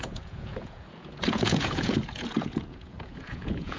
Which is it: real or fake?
fake